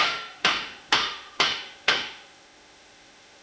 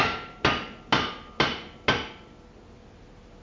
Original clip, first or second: second